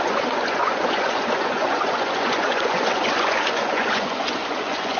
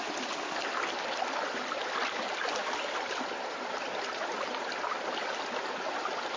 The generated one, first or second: first